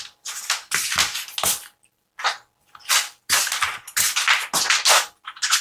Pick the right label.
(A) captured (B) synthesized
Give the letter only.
A